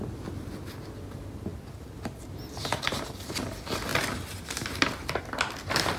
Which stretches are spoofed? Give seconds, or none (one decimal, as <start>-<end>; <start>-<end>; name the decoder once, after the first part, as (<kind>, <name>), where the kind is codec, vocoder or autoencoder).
none